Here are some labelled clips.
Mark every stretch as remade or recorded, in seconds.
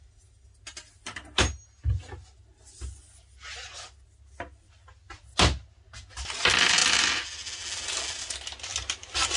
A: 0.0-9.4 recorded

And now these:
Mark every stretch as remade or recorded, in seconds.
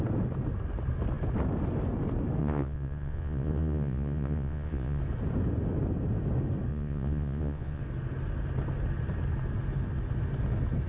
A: 0.0-2.4 recorded; 2.4-5.0 remade; 5.0-6.7 recorded; 6.7-7.8 remade; 7.8-10.9 recorded